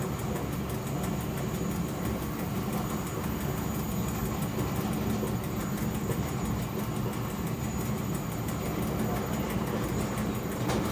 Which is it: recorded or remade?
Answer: recorded